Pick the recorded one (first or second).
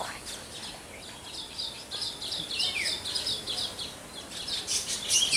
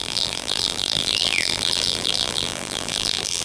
first